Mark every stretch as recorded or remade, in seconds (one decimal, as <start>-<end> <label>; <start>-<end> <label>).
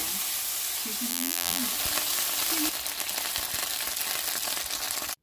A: 0.0-1.1 recorded; 1.1-1.6 remade; 1.6-5.2 recorded